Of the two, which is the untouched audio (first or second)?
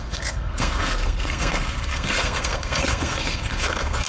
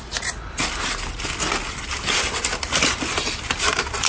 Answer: second